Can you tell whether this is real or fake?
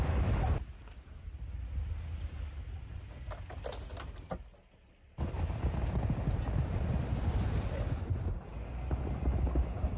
real